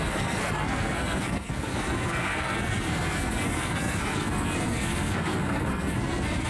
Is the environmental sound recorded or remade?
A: remade